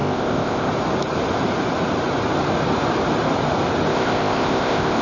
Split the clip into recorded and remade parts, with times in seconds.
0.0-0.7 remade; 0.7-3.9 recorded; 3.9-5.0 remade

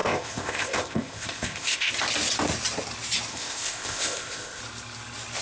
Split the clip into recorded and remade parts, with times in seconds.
0.0-1.9 remade; 1.9-3.3 recorded; 3.3-4.6 remade; 4.6-5.4 recorded

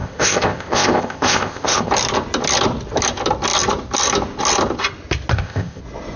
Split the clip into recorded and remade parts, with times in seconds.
0.0-1.9 remade; 1.9-5.3 recorded; 5.3-5.8 remade; 5.8-6.2 recorded

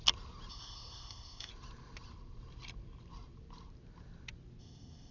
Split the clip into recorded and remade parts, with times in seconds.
0.0-0.5 recorded; 0.5-1.5 remade; 1.5-4.6 recorded; 4.6-5.1 remade

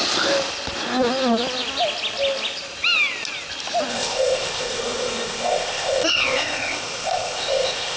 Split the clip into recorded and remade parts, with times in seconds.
0.0-3.9 recorded; 3.9-8.0 remade

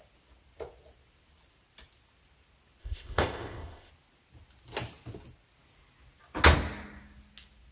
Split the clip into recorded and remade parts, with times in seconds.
0.0-2.8 recorded; 2.8-3.9 remade; 3.9-7.7 recorded

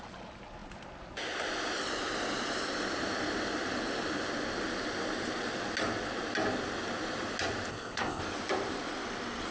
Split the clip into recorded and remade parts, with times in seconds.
0.0-7.7 recorded; 7.7-8.2 remade; 8.2-9.5 recorded

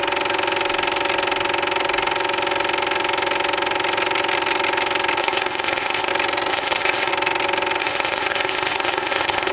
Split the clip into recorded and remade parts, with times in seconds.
0.0-5.2 recorded; 5.2-6.1 remade; 6.1-6.5 recorded; 6.5-7.1 remade; 7.1-7.8 recorded; 7.8-9.5 remade